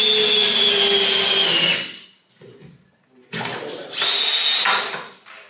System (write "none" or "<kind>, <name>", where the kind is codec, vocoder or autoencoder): none